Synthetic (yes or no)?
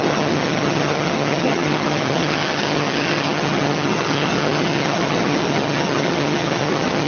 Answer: yes